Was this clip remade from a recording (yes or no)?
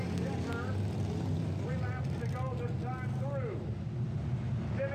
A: no